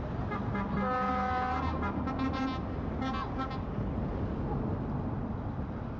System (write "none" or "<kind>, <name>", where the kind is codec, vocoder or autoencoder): none